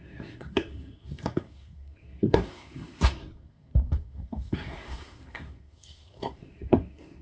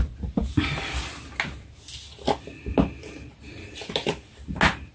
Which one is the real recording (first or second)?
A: second